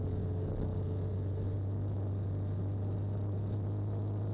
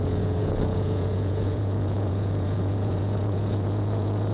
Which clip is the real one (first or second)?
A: first